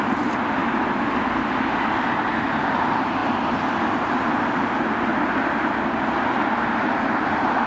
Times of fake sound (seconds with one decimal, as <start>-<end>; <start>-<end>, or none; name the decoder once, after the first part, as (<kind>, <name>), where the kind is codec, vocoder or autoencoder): 0.0-0.6 (vocoder, BigVGAN v2); 2.0-3.2; 3.9-5.1; 6.8-7.7